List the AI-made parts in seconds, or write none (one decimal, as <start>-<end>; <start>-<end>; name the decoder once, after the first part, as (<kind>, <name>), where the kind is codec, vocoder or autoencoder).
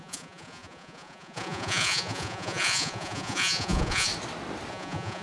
0.0-4.1 (vocoder, Vocos); 4.7-5.2